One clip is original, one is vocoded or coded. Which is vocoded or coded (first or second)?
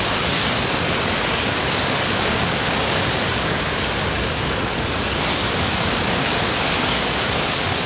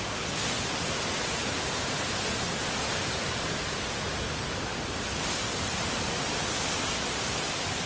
first